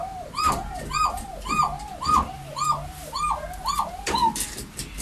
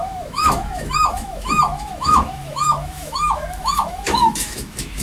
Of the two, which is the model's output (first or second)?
second